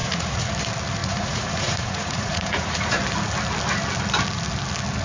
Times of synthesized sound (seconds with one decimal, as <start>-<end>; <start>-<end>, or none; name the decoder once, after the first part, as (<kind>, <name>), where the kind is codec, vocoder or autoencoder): 0.0-0.5 (vocoder, Vocos); 1.0-3.0